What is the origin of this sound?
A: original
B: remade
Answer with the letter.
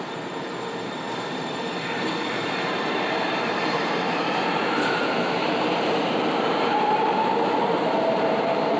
B